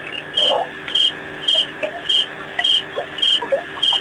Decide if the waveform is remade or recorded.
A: recorded